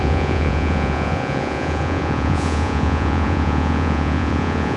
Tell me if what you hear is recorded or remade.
remade